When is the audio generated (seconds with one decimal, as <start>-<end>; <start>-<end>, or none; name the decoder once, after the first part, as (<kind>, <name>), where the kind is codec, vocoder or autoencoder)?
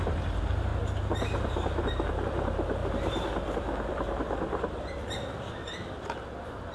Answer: 0.0-0.7 (vocoder, BigVGAN v2); 2.1-5.6